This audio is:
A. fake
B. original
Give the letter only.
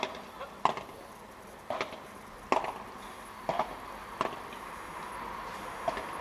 B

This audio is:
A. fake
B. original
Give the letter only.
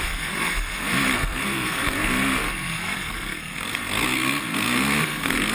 A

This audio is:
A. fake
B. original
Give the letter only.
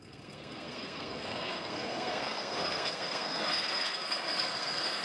A